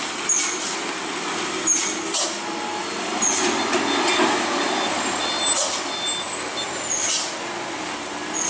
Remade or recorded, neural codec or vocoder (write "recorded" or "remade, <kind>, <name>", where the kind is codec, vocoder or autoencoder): recorded